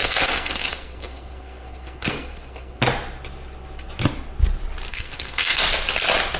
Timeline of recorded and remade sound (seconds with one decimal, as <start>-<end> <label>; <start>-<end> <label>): 0.0-2.8 remade; 2.8-4.9 recorded; 4.9-5.6 remade; 5.6-6.4 recorded